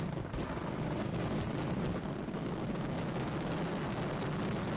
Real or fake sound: real